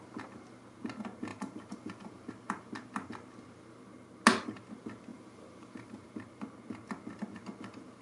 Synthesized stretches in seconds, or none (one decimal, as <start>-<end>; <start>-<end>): 1.3-2.3; 5.1-6.1